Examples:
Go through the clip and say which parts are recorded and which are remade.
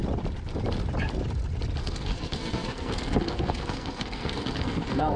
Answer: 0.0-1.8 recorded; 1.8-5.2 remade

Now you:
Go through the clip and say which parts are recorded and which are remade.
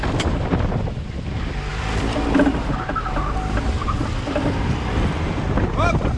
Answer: 0.0-6.2 recorded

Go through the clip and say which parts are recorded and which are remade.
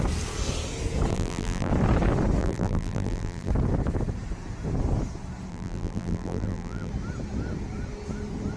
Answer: 0.0-1.1 recorded; 1.1-1.7 remade; 1.7-2.4 recorded; 2.4-3.5 remade; 3.5-5.5 recorded; 5.5-6.9 remade; 6.9-8.6 recorded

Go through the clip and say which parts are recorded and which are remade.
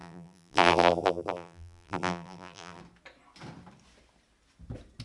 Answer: 0.0-2.8 remade; 2.8-5.0 recorded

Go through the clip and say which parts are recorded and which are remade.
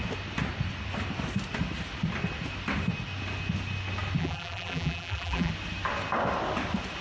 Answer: 0.0-4.2 recorded; 4.2-5.5 remade; 5.5-7.0 recorded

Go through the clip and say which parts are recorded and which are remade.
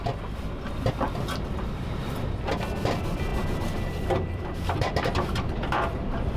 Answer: 0.0-0.9 recorded; 0.9-6.4 remade